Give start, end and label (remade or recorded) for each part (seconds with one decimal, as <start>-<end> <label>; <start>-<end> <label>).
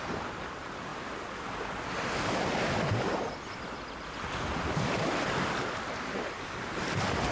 0.0-7.3 recorded